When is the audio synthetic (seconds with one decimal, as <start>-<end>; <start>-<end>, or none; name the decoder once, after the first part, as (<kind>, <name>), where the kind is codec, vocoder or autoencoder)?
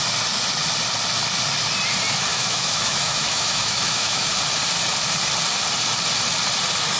2.3-4.3 (autoencoder, DAC-VAE)